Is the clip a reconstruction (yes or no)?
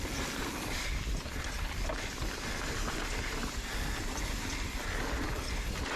no